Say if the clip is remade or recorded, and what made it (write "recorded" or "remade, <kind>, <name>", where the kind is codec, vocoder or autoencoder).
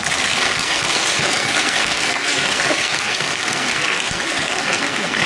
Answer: remade, codec, SNAC